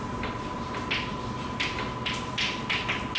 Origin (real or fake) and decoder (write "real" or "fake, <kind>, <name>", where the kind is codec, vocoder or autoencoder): real